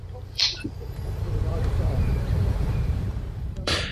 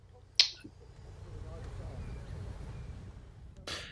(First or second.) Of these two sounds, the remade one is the first